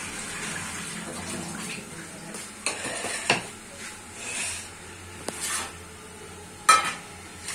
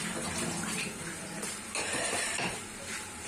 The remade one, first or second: second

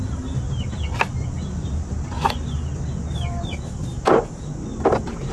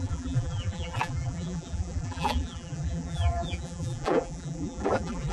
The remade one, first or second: second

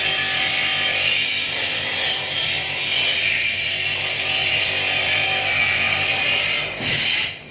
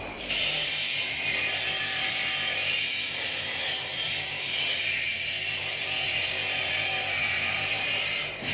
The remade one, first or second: second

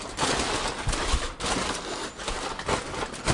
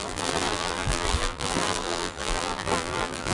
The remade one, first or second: second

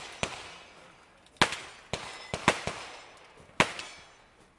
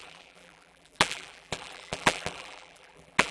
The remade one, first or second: second